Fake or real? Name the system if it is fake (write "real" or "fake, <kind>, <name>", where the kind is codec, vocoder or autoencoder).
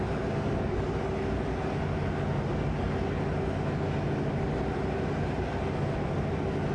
real